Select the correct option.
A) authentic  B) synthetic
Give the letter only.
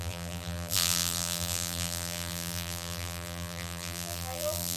B